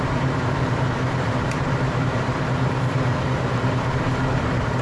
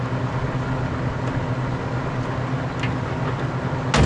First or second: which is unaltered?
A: second